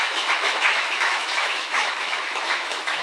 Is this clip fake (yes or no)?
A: yes